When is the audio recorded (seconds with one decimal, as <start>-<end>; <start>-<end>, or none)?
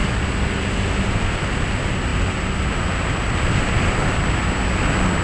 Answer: 0.0-5.2